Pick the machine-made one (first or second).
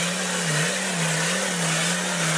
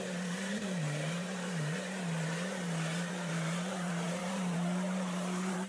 second